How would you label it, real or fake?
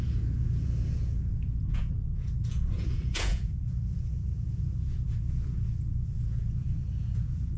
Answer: fake